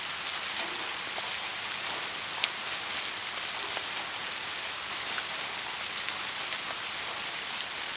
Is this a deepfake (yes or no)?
no